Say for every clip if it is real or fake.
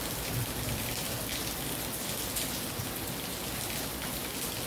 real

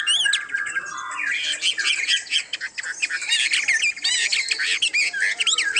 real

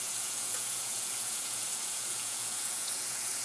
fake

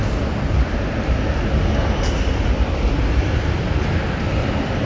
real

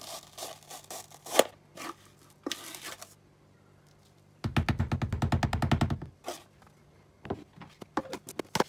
real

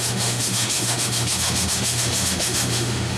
fake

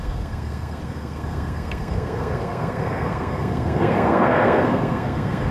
fake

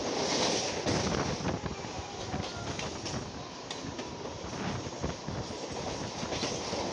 real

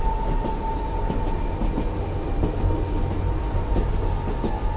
real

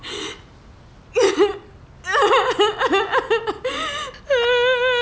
real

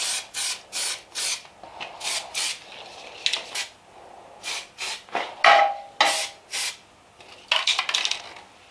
real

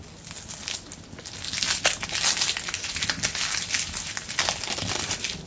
real